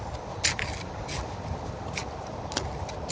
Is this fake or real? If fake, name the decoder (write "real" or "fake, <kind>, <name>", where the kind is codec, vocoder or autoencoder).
real